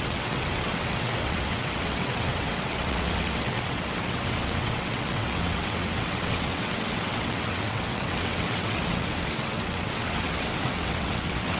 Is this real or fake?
fake